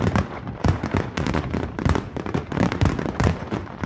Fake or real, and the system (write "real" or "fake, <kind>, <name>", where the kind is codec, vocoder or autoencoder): fake, vocoder, Vocos